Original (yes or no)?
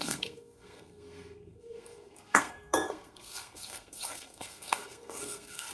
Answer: no